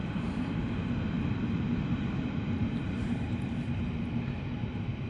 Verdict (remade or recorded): remade